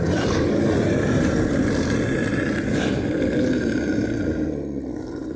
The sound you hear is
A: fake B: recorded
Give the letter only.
B